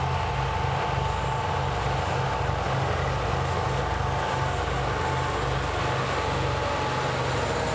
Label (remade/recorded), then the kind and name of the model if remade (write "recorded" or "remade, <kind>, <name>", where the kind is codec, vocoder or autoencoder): recorded